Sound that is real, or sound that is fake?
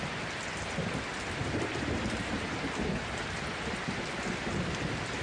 real